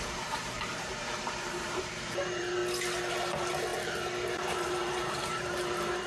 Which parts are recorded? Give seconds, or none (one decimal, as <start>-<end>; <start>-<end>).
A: 2.6-3.1